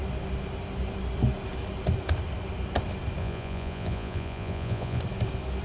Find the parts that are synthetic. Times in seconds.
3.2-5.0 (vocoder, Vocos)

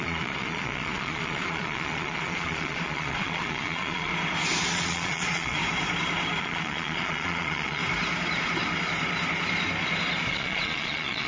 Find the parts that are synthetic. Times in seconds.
0.0-4.1 (vocoder, Vocos); 4.6-5.6; 6.4-7.8; 10.3-11.3

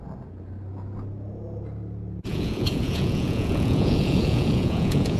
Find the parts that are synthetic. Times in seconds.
2.3-5.2 (vocoder, Vocos)

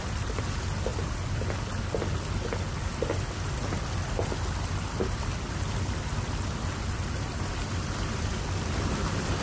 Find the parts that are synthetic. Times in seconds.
none

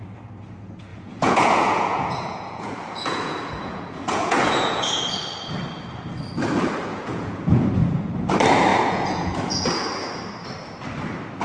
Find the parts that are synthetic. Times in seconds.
0.9-5.0 (vocoder, Vocos); 6.9-7.7; 8.7-9.7

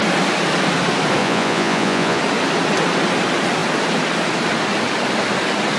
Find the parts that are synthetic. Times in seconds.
1.2-2.2 (vocoder, Vocos)

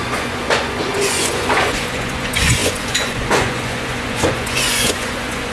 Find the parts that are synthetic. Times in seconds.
0.0-5.5 (vocoder, Vocos)